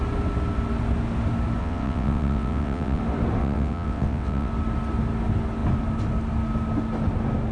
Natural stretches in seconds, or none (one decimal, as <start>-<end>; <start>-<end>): 0.0-1.6; 3.0-3.4; 4.5-7.5